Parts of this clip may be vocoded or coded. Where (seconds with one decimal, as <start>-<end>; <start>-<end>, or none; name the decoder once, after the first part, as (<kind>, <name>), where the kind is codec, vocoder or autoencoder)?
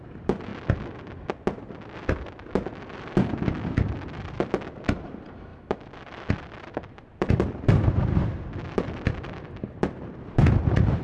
0.0-0.5 (vocoder, BigVGAN v2); 2.8-11.0